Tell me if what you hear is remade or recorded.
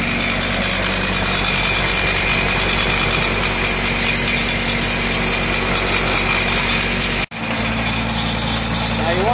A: recorded